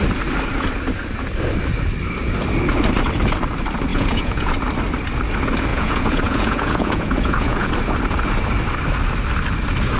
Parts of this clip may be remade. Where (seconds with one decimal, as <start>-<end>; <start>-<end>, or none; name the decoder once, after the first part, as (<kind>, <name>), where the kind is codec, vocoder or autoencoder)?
3.9-4.5 (vocoder, Vocos); 5.7-7.7